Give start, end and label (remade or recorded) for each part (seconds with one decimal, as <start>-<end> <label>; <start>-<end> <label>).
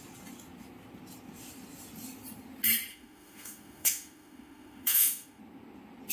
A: 0.0-2.9 recorded; 2.9-5.4 remade; 5.4-6.1 recorded